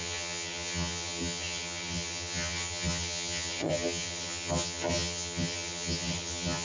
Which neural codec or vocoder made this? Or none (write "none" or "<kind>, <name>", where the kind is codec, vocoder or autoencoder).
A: vocoder, HiFi-GAN